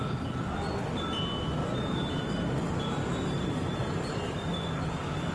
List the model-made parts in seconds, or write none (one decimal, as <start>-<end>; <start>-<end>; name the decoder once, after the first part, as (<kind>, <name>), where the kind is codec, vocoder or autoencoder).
1.6-4.6 (vocoder, BigVGAN v2)